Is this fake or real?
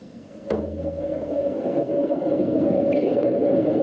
fake